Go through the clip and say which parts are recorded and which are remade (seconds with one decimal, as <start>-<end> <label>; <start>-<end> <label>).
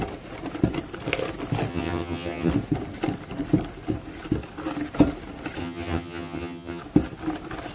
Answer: 0.0-1.7 recorded; 1.7-2.5 remade; 2.5-5.6 recorded; 5.6-6.8 remade; 6.8-7.7 recorded